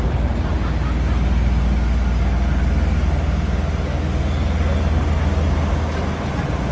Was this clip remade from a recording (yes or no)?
no